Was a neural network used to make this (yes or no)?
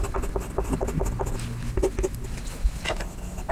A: no